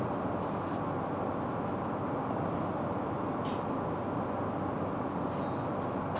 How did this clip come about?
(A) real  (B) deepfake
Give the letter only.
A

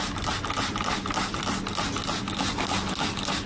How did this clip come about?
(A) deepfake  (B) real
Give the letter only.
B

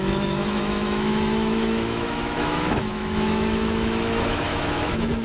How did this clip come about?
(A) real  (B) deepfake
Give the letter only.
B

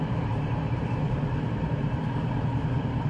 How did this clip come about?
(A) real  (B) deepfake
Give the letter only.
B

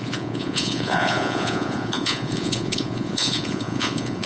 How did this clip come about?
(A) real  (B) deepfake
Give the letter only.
B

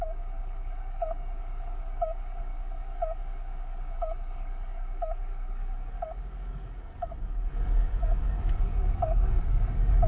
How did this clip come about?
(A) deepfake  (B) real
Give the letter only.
A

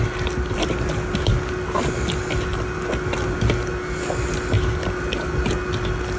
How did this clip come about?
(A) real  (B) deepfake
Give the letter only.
A